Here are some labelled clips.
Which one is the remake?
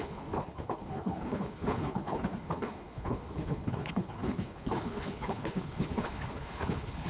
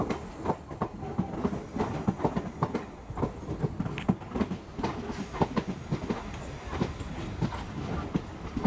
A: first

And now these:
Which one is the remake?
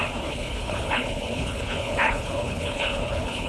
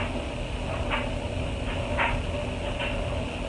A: first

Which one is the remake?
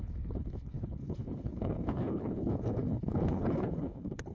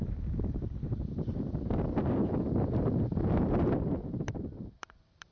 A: first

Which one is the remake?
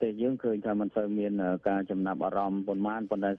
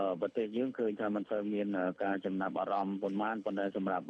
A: second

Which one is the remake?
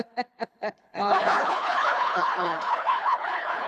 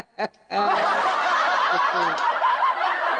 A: first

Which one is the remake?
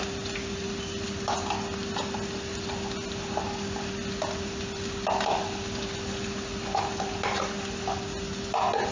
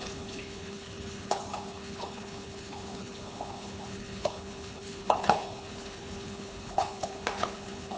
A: second